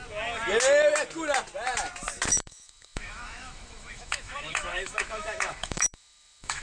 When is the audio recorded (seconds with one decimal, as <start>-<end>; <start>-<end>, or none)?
0.0-2.3